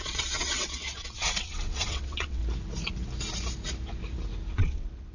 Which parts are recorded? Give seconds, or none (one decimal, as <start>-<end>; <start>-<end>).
2.4-4.5